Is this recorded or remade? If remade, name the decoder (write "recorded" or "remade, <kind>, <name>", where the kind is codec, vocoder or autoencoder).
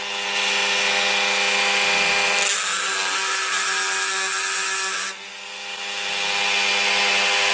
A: recorded